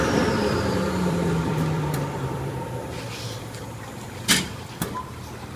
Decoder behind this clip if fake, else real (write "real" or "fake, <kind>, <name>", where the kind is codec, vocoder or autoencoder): fake, vocoder, BigVGAN v2